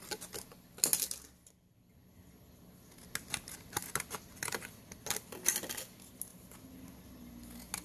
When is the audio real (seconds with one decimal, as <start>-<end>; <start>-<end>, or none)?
0.0-7.8